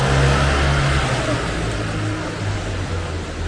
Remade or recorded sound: recorded